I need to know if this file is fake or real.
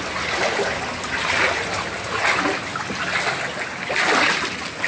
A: real